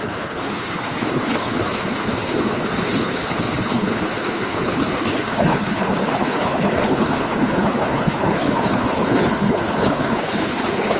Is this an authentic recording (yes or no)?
no